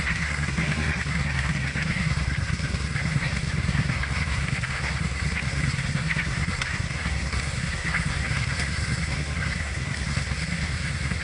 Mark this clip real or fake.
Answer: fake